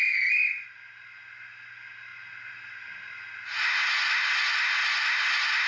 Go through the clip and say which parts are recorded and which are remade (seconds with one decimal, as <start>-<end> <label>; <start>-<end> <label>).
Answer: 0.0-5.7 recorded